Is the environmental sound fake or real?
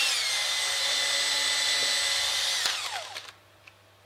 real